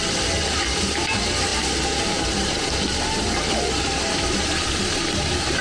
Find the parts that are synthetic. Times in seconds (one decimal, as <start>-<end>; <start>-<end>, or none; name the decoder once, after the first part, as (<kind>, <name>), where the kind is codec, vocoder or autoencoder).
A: none